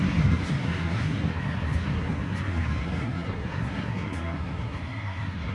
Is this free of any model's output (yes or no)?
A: no